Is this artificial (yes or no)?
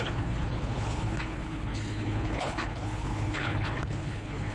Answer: yes